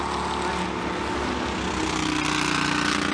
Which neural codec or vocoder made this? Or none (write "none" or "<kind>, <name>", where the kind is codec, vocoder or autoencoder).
none